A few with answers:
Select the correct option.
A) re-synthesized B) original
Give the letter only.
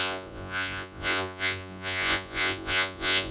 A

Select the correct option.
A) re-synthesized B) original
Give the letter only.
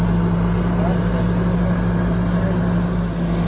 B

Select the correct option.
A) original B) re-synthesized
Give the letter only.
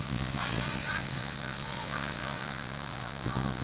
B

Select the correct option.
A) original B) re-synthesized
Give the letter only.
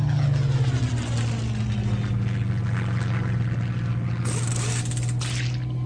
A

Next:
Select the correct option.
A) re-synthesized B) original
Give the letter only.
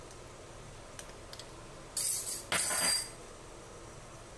B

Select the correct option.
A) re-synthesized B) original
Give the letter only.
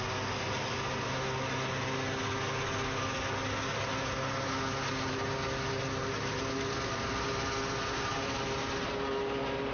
B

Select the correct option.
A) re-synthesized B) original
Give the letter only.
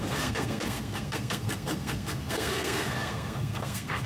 A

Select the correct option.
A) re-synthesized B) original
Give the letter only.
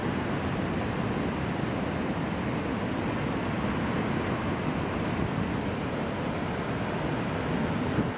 B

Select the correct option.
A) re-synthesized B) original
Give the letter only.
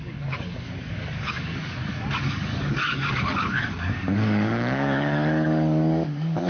A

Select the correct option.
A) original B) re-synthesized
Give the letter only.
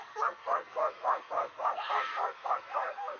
B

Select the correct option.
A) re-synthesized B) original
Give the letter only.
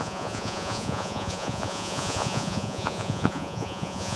A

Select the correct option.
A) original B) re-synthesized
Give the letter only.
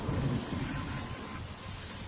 A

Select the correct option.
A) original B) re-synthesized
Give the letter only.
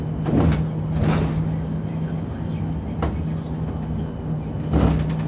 A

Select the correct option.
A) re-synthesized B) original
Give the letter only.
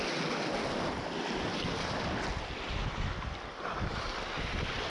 B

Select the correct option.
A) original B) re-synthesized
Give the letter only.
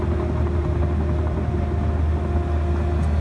A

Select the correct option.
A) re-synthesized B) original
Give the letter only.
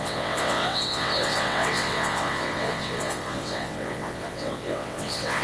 A